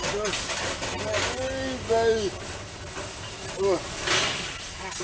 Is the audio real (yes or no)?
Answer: yes